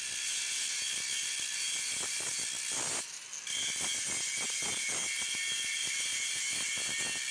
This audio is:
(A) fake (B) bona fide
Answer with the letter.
B